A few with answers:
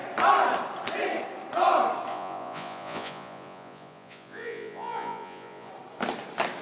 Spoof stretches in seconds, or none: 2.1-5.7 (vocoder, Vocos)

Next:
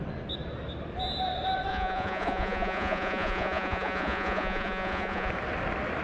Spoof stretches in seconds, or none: 1.7-5.3 (vocoder, Vocos)